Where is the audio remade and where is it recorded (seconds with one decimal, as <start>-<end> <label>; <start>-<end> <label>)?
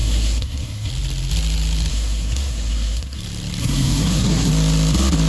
0.0-0.9 remade; 0.9-1.9 recorded; 1.9-3.2 remade; 3.2-3.6 recorded; 3.6-4.5 remade; 4.5-5.3 recorded